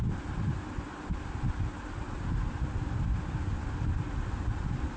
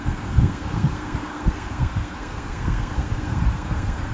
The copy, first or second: second